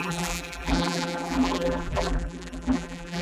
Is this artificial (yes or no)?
yes